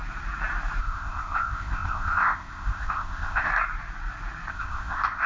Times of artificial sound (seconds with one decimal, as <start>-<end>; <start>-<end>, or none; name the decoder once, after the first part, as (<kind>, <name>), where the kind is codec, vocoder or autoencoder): 0.8-3.5 (codec, ZipCodec); 4.5-5.3